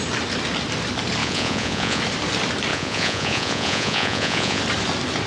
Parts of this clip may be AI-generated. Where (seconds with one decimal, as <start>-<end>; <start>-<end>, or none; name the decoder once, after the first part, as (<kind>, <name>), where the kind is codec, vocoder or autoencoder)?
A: 1.2-2.0 (vocoder, Vocos); 2.7-4.6